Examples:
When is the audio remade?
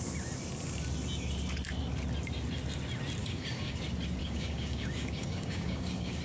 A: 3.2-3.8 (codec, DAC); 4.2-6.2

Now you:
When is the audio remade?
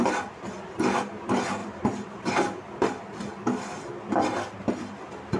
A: 1.6-3.3 (vocoder, BigVGAN v2)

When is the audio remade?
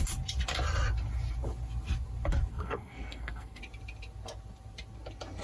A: 2.5-3.6 (codec, SNAC)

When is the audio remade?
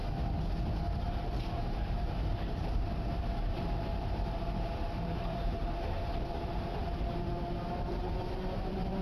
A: 1.0-7.3 (vocoder, BigVGAN v2); 7.9-9.0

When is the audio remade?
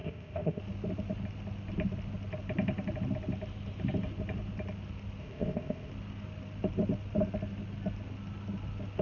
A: 0.0-0.6 (codec, ZipCodec); 5.2-5.9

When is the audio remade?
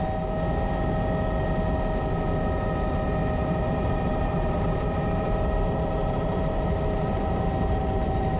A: 3.4-8.4 (vocoder, BigVGAN v2)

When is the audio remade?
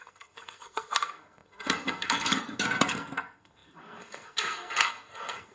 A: 0.0-5.5 (codec, SNAC)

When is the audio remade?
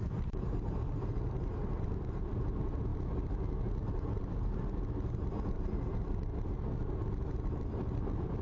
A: 0.0-2.9 (vocoder, BigVGAN v2); 3.9-6.3; 6.8-8.4